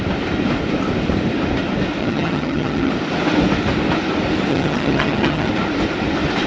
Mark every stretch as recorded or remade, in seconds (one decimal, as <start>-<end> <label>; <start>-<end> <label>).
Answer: 0.0-2.0 recorded; 2.0-2.9 remade; 2.9-4.5 recorded; 4.5-5.5 remade; 5.5-6.5 recorded